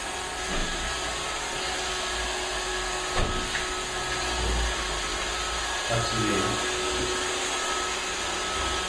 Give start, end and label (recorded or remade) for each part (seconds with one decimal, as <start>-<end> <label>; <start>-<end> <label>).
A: 0.0-0.6 recorded; 0.6-1.9 remade; 1.9-8.9 recorded